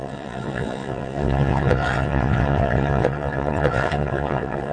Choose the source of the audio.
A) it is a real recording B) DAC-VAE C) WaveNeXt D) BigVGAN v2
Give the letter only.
C